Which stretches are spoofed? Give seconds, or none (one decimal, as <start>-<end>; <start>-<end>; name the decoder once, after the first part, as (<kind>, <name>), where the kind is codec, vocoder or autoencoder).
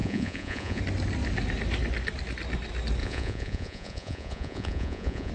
0.0-0.8 (vocoder, Vocos); 3.0-5.3